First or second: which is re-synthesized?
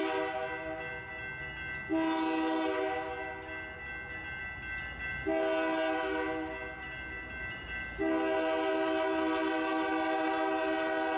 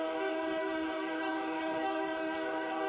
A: second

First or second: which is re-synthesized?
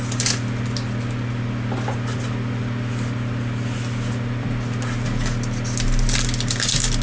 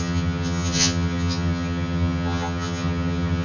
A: second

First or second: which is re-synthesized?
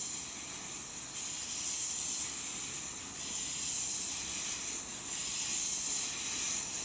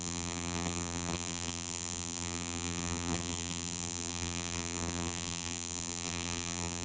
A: second